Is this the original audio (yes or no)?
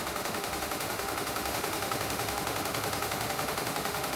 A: no